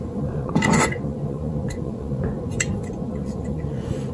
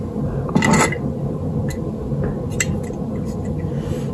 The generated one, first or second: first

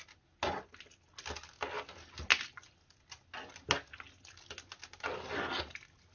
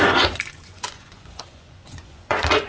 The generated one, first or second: second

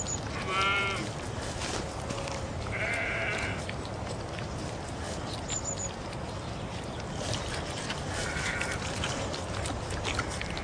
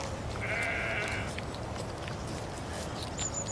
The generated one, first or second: first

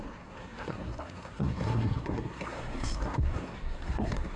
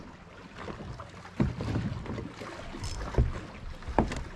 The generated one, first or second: first